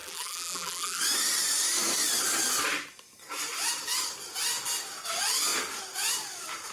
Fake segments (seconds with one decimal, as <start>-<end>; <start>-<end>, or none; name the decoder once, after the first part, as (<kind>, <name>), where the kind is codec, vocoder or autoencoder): 0.0-1.0 (vocoder, BigVGAN v2)